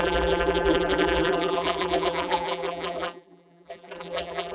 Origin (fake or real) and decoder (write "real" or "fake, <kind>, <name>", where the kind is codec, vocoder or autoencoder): fake, vocoder, BigVGAN v2